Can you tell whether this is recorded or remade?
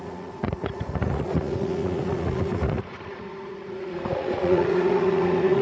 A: remade